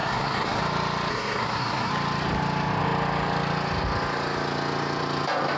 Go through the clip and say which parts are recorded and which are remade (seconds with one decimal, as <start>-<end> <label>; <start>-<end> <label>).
0.0-0.6 remade; 0.6-1.1 recorded; 1.1-1.9 remade; 1.9-5.6 recorded